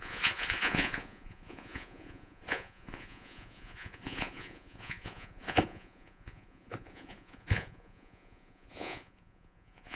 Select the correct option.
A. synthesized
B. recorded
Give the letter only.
A